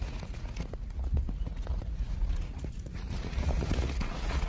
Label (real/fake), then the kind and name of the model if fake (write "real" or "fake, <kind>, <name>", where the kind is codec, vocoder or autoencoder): fake, vocoder, Vocos